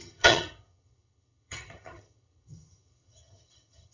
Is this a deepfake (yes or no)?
yes